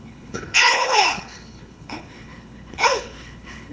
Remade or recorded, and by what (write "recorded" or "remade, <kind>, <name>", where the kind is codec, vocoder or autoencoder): remade, codec, HILCodec